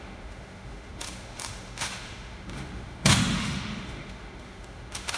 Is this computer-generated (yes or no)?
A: yes